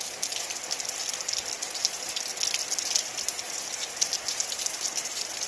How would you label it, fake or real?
real